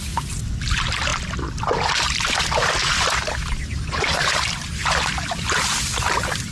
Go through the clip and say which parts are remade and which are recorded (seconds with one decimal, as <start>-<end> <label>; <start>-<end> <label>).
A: 0.0-6.5 recorded